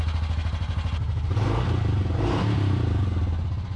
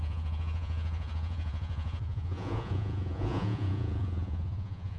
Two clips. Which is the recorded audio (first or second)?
first